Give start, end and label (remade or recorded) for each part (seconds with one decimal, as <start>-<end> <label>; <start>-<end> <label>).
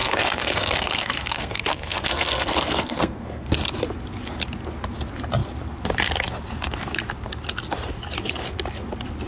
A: 0.0-3.5 remade; 3.5-9.3 recorded